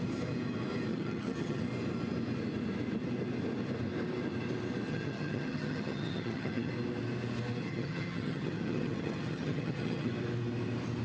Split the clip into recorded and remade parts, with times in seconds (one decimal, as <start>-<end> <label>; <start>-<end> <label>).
0.0-0.9 recorded; 0.9-1.6 remade; 1.6-4.9 recorded; 4.9-6.7 remade; 6.7-7.6 recorded; 7.6-10.1 remade; 10.1-11.0 recorded